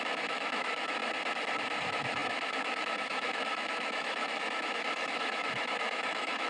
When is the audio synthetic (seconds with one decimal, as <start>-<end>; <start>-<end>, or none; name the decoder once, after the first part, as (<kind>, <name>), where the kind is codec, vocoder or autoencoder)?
0.0-1.0 (autoencoder, DAC-VAE); 1.8-6.5